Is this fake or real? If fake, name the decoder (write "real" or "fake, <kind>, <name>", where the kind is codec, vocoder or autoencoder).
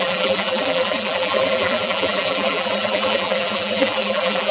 fake, vocoder, BigVGAN v2